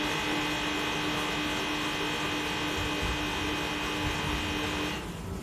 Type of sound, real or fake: real